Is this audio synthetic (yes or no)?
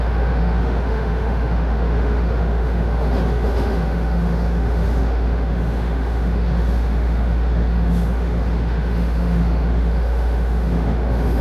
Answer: yes